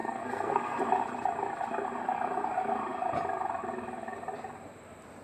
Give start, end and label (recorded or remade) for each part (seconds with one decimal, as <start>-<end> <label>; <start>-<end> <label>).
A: 0.0-0.8 remade; 0.8-5.2 recorded